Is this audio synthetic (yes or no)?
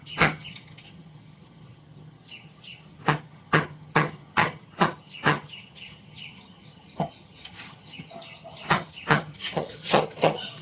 yes